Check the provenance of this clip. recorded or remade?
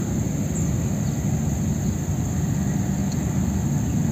recorded